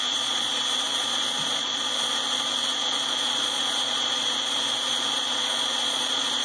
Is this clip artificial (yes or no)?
yes